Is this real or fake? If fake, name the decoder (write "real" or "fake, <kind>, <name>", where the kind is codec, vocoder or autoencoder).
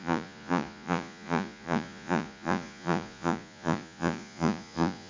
fake, vocoder, Vocos